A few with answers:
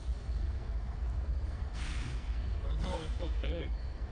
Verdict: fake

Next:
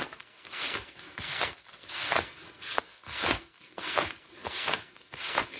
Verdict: fake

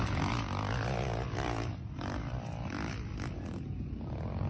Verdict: real